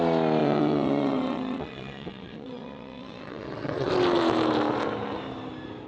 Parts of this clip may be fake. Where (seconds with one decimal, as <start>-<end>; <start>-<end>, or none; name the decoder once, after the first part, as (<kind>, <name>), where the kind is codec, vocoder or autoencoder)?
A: 0.4-3.9 (vocoder, WaveNeXt)